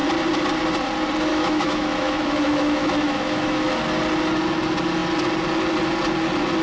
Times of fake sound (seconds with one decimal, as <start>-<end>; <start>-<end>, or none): 1.3-3.7